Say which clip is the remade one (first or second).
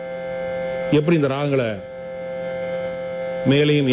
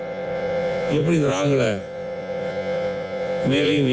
second